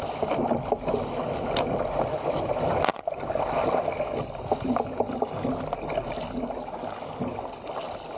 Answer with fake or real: real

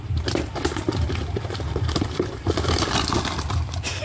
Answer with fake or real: real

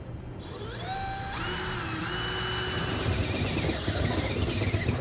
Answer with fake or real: fake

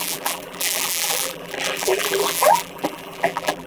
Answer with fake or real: fake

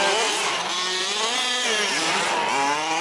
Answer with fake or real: fake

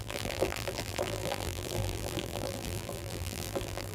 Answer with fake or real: fake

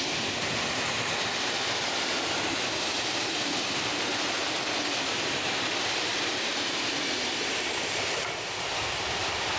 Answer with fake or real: fake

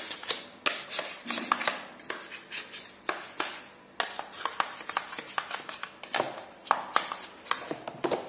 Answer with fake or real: real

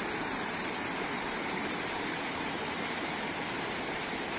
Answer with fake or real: fake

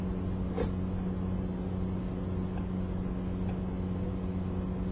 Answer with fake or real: real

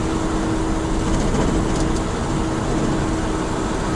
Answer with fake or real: real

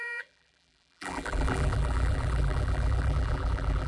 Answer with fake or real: fake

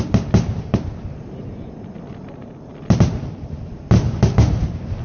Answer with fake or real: real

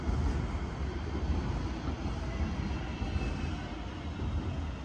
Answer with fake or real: real